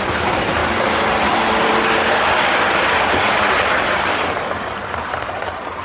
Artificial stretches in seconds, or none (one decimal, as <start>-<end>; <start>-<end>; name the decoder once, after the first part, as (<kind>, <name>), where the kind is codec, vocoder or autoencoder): 0.0-0.6 (vocoder, BigVGAN v2); 4.1-5.8